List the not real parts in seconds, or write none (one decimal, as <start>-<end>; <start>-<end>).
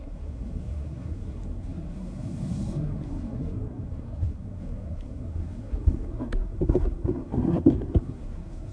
0.0-8.7